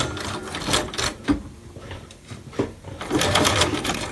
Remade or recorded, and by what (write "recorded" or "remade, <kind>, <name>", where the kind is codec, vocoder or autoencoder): remade, vocoder, BigVGAN v2